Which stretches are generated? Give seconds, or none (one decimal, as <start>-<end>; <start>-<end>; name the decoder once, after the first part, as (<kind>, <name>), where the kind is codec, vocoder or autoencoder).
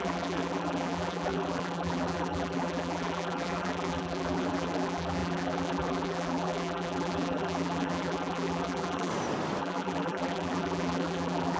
0.0-9.1 (vocoder, BigVGAN v2); 9.6-11.6